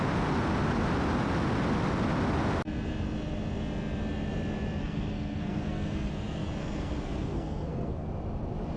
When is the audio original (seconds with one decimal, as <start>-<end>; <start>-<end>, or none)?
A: 0.0-4.8; 6.1-6.6; 8.1-8.8